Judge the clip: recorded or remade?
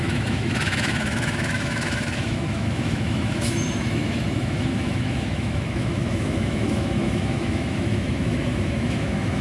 remade